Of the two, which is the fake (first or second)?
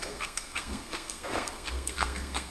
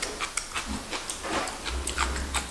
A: first